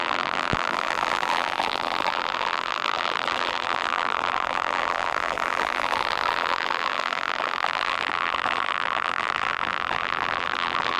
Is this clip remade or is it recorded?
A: remade